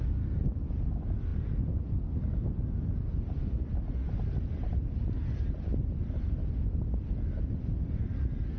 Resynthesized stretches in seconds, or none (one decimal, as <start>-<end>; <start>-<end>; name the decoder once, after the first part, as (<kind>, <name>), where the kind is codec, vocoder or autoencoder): none